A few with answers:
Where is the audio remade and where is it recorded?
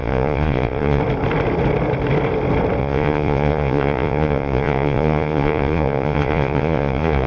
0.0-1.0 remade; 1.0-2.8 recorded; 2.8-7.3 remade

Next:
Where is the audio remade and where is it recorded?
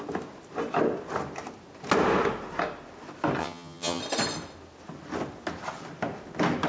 0.0-3.4 recorded; 3.4-4.0 remade; 4.0-6.7 recorded